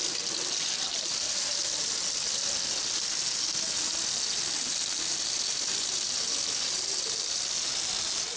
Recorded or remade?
recorded